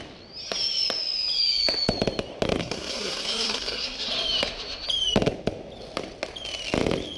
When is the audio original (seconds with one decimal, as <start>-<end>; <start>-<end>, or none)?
0.0-2.6; 4.1-7.2